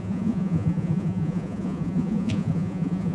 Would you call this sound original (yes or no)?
no